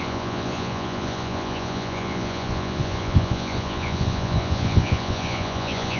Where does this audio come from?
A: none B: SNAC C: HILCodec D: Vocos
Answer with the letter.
D